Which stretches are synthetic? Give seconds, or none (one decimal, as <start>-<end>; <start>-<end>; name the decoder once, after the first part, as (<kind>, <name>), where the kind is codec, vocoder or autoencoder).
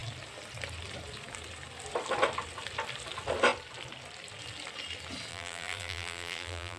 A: 5.3-6.8 (vocoder, BigVGAN v2)